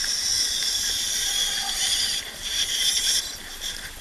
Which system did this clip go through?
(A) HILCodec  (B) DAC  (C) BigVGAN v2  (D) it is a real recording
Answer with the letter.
D